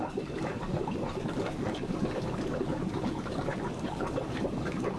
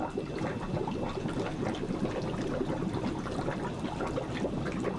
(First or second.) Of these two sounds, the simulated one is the first